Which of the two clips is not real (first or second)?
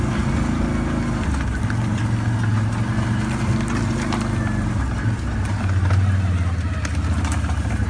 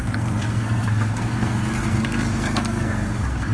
second